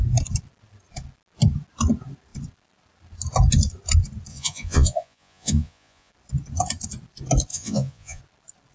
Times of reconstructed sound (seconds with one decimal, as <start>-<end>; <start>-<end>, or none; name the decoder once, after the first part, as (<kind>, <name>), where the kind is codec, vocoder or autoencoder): 4.3-6.1 (vocoder, Vocos); 7.5-8.2